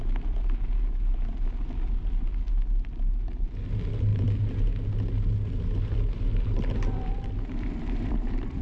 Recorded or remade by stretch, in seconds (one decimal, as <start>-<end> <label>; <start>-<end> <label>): 0.0-8.6 recorded